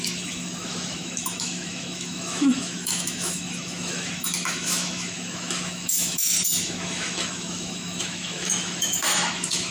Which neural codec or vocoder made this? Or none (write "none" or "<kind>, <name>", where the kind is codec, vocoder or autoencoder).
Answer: autoencoder, DAC-VAE